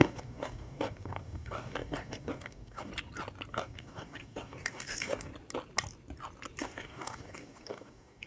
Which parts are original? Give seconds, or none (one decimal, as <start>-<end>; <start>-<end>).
2.9-3.5; 5.3-6.6